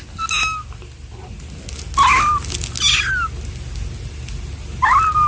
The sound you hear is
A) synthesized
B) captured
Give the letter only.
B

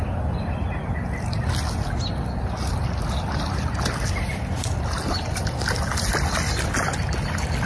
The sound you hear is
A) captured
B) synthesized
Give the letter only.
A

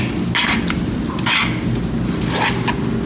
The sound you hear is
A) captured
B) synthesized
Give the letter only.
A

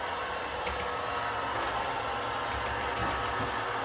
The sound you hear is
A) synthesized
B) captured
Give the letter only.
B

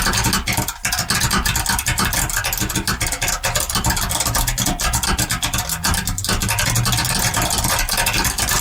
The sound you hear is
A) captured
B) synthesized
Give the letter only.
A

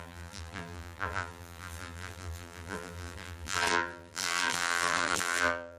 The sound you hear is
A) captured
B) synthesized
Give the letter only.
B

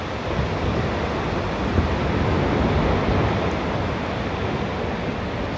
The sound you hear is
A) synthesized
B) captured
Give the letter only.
B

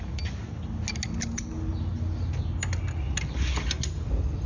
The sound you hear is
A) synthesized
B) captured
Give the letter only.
B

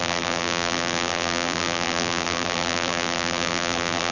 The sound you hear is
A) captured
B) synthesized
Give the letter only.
B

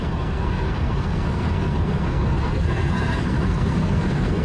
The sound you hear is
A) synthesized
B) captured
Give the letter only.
A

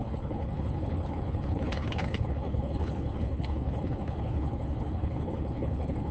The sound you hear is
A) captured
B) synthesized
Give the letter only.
B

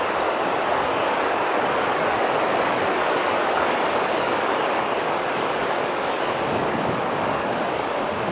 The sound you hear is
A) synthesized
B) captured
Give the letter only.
A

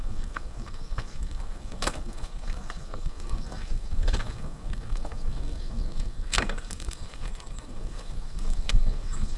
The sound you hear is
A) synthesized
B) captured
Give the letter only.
A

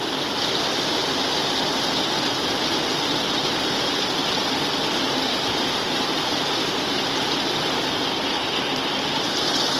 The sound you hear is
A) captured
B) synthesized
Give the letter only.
A